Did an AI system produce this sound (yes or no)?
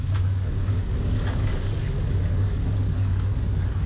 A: yes